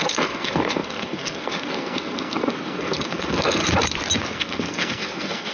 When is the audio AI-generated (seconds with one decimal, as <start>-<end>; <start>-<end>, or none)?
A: 0.0-3.6; 4.2-5.5